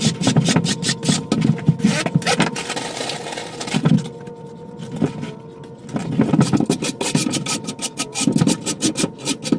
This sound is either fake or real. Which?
real